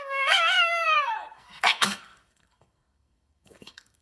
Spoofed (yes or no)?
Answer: yes